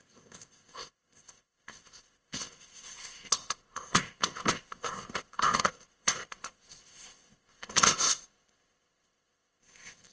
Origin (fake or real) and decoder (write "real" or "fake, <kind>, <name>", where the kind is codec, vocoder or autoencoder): fake, codec, ZipCodec